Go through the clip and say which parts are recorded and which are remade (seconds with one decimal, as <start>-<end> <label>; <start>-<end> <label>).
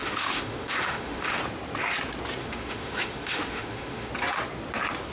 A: 0.0-1.4 remade; 1.4-2.4 recorded; 2.4-4.1 remade; 4.1-5.1 recorded